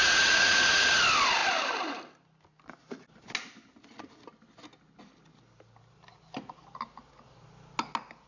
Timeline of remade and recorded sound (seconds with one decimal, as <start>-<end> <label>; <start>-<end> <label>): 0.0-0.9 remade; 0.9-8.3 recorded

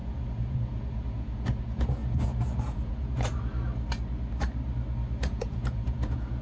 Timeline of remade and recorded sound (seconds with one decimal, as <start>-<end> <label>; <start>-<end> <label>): 0.0-3.5 remade; 3.5-5.2 recorded; 5.2-6.4 remade

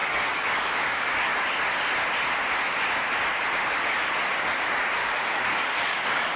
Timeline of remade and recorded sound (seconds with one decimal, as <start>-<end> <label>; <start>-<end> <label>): 0.0-1.3 remade; 1.3-5.0 recorded; 5.0-6.4 remade